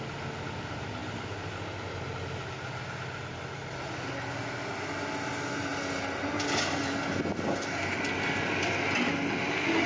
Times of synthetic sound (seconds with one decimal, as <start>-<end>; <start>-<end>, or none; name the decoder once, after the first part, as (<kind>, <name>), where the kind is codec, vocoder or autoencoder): none